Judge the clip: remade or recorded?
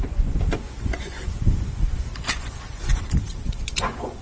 remade